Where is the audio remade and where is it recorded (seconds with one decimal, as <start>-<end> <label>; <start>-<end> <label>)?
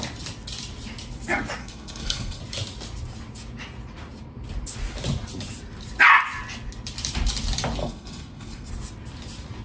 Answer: 0.0-1.6 recorded; 1.6-2.4 remade; 2.4-7.8 recorded; 7.8-8.7 remade; 8.7-9.6 recorded